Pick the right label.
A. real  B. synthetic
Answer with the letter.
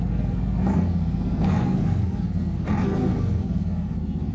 B